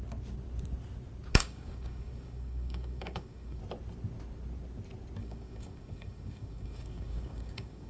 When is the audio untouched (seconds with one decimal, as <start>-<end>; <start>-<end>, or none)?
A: 0.0-1.3; 3.6-5.2